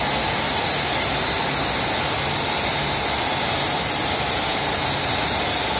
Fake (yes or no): no